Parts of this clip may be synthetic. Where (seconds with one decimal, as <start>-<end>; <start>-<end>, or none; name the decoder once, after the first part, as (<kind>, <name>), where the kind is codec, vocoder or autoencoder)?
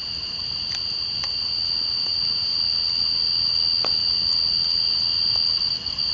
none